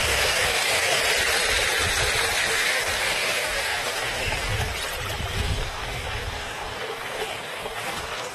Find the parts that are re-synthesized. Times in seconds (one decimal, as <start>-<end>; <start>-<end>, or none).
0.0-1.0; 2.5-4.7; 5.3-8.3